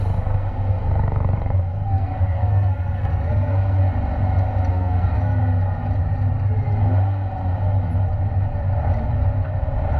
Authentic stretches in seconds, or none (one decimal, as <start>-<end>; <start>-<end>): 3.8-4.7; 5.4-10.0